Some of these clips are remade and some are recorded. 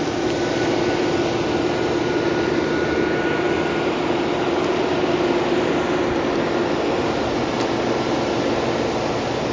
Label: recorded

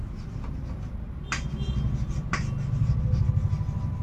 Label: recorded